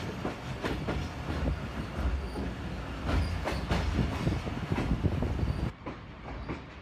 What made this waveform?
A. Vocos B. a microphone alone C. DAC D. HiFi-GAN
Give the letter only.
B